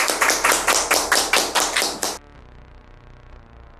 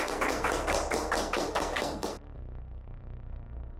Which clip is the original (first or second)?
first